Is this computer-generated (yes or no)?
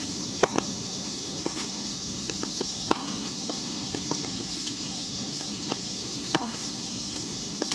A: yes